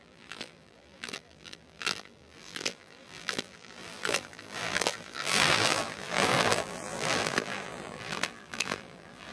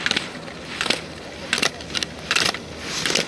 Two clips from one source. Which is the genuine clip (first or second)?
second